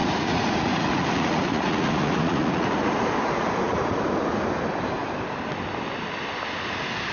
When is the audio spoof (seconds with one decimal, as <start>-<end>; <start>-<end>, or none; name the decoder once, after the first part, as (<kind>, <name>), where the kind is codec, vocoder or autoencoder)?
0.0-4.0 (vocoder, Vocos)